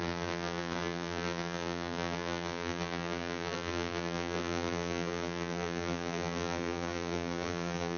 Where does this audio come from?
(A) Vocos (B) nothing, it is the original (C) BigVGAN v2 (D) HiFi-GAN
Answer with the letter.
C